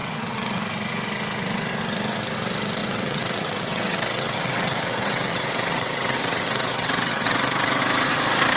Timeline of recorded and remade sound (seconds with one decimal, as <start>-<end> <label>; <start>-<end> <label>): 0.0-0.6 remade; 0.6-2.8 recorded; 2.8-7.8 remade; 7.8-8.6 recorded